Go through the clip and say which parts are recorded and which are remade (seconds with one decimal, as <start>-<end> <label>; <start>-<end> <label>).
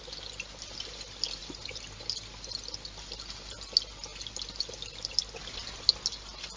0.0-1.4 recorded; 1.4-2.0 remade; 2.0-6.6 recorded